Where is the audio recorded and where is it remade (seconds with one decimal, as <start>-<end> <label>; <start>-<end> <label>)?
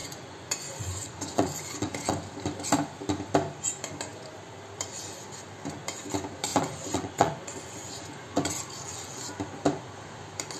0.0-2.1 remade; 2.1-6.5 recorded; 6.5-9.2 remade; 9.2-10.6 recorded